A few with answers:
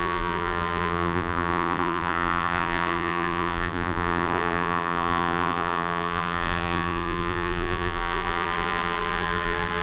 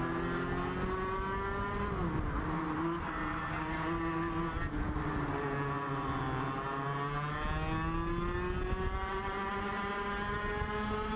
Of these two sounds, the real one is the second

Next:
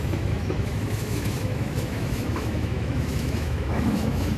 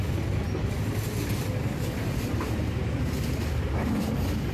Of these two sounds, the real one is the second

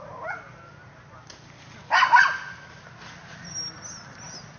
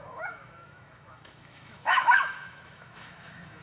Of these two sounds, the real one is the first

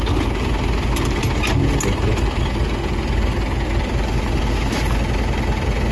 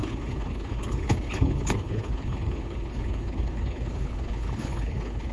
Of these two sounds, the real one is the first